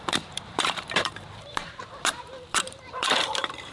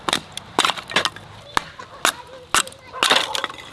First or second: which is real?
second